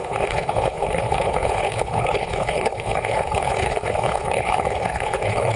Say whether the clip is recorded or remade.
remade